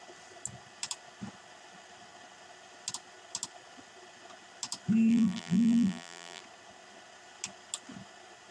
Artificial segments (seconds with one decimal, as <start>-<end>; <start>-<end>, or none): 5.1-6.4